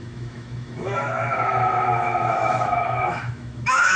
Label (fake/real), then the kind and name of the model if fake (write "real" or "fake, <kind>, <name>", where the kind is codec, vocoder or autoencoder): fake, autoencoder, DAC-VAE